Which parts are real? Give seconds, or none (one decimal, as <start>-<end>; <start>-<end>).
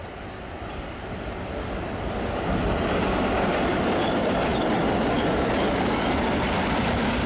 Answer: 0.0-7.3